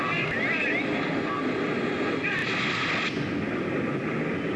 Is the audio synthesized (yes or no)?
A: no